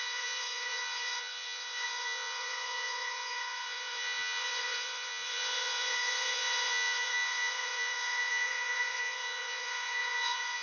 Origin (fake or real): fake